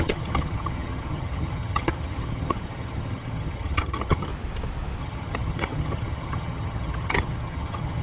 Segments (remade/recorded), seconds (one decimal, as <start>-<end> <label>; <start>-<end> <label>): 0.0-4.3 remade; 4.3-5.0 recorded; 5.0-8.0 remade